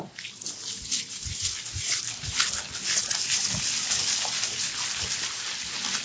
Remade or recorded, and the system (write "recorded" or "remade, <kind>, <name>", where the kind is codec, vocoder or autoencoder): recorded